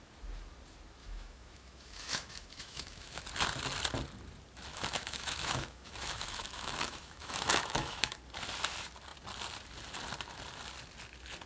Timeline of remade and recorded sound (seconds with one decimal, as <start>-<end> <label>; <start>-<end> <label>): 0.0-1.0 recorded; 1.0-3.2 remade; 3.2-4.7 recorded; 4.7-8.2 remade; 8.2-11.5 recorded